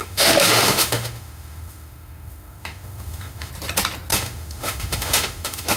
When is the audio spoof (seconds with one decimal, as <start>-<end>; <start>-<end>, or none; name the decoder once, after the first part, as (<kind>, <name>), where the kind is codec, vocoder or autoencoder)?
0.0-3.5 (autoencoder, DAC-VAE); 4.1-5.8